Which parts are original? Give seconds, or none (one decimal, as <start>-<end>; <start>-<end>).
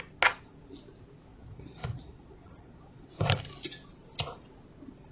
0.0-1.3; 3.1-5.1